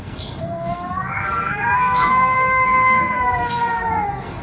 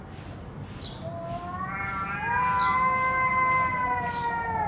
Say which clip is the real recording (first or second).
second